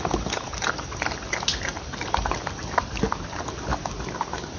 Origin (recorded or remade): recorded